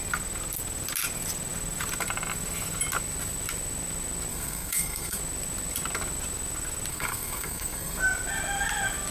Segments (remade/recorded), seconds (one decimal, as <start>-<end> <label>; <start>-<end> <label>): 0.0-4.3 recorded; 4.3-5.2 remade; 5.2-6.9 recorded; 6.9-8.0 remade; 8.0-9.1 recorded